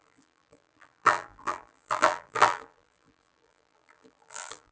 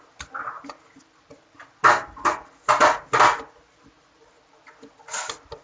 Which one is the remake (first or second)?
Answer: first